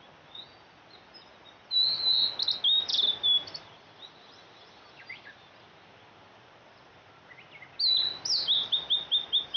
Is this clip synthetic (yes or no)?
no